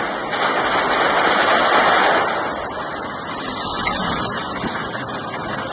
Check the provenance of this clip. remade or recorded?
recorded